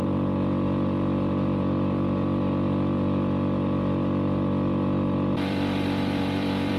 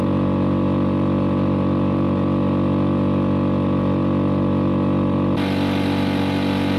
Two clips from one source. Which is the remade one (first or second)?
first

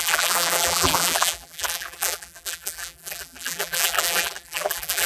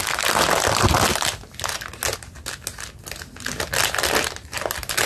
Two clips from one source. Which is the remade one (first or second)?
first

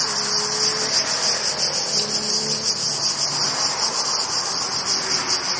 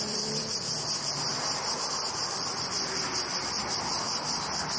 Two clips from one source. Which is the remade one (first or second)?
second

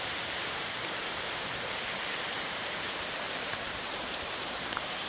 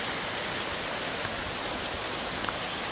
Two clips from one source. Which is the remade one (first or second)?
first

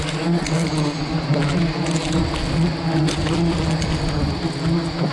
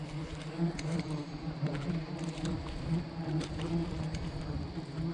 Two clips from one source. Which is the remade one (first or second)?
second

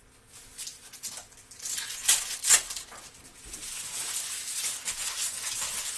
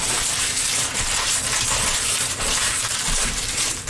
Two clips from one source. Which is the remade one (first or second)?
second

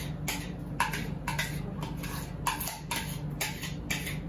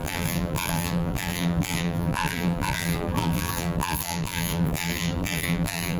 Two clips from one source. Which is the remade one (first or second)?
second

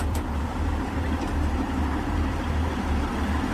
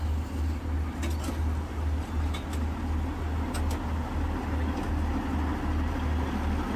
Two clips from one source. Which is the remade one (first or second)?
first